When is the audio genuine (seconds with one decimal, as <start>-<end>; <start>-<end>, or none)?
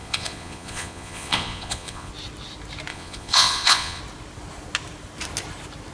2.1-2.9; 4.0-5.9